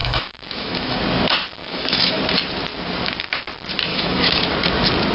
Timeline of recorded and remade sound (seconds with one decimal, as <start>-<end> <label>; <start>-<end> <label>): 0.0-1.0 remade; 1.0-1.6 recorded; 1.6-2.2 remade; 2.2-3.9 recorded; 3.9-4.4 remade; 4.4-5.1 recorded